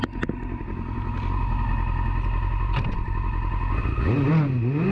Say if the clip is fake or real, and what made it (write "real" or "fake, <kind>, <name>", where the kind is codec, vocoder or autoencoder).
real